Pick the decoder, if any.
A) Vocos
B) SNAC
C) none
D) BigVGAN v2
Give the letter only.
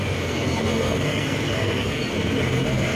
B